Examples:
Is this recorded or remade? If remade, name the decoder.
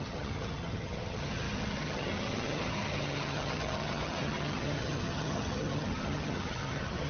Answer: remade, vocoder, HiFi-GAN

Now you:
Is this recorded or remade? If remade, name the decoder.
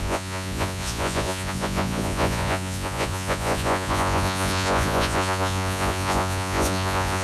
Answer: remade, vocoder, Vocos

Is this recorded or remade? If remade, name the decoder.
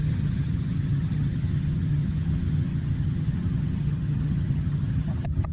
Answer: remade, vocoder, HiFi-GAN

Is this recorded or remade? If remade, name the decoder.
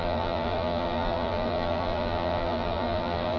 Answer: remade, vocoder, BigVGAN v2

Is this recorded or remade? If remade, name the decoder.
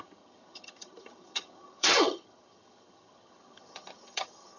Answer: remade, vocoder, HiFi-GAN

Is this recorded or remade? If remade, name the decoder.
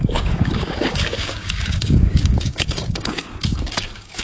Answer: remade, codec, DAC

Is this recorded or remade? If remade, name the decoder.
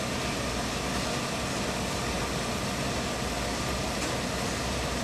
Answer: recorded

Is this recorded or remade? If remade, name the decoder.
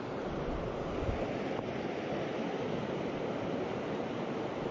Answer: recorded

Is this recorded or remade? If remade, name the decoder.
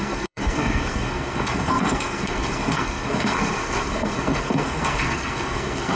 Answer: remade, codec, SNAC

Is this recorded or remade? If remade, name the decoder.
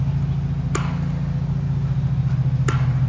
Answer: recorded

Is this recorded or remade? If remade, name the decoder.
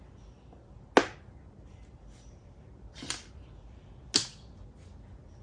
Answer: recorded